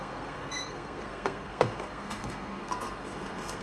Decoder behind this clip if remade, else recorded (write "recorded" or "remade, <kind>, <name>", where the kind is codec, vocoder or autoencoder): remade, codec, SNAC